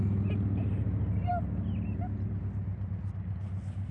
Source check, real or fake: real